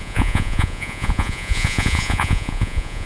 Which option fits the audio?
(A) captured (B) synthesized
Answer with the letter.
B